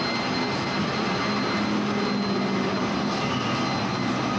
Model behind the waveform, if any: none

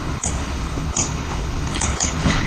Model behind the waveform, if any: codec, HILCodec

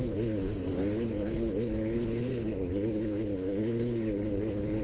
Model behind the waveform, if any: codec, HILCodec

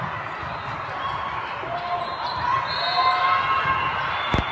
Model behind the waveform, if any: none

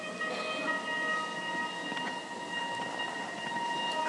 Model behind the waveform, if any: none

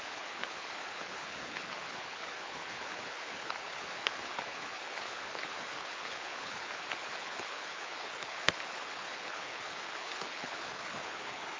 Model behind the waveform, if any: codec, HILCodec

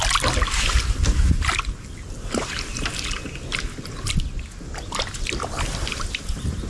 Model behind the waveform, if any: none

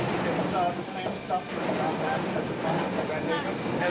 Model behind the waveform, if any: none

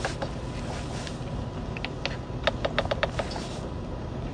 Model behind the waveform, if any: none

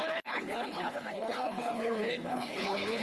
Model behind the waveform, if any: codec, HILCodec